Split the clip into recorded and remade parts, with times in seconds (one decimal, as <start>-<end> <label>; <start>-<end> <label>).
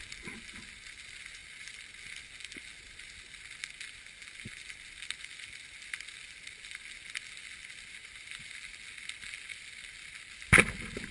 0.0-1.4 recorded; 1.4-1.9 remade; 1.9-9.5 recorded; 9.5-10.3 remade; 10.3-11.1 recorded